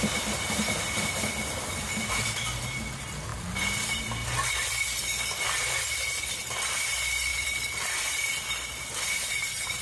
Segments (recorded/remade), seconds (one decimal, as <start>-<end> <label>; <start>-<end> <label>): 0.0-9.8 remade